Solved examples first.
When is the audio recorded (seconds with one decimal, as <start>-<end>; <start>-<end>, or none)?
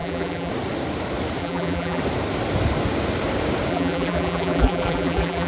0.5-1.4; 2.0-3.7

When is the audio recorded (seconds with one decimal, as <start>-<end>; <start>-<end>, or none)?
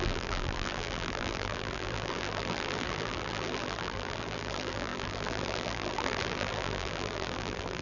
none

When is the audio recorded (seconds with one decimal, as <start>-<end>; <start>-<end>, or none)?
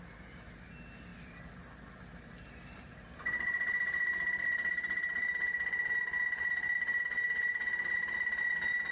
0.0-1.1; 5.9-7.5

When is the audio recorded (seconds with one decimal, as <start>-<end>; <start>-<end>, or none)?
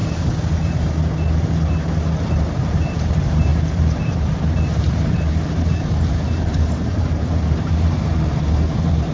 0.0-2.3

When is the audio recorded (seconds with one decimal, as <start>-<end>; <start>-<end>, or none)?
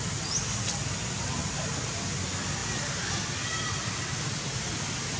0.0-1.4; 2.2-2.6; 3.2-5.2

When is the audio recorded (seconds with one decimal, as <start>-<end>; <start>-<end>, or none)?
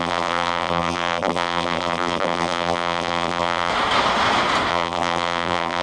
3.7-4.7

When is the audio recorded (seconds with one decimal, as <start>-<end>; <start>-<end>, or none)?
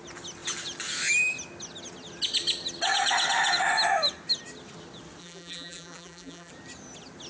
0.0-5.2; 6.5-7.3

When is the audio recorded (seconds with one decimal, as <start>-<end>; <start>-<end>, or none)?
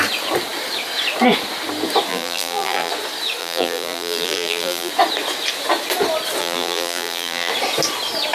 0.0-2.1; 2.9-3.4; 4.9-6.4; 7.5-8.3